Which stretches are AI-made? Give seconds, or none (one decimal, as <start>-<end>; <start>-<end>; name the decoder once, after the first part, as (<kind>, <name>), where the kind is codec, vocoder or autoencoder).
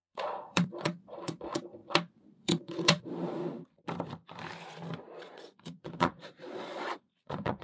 0.0-1.8 (vocoder, Vocos); 2.3-3.4; 5.2-7.6